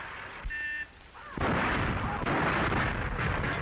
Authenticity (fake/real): fake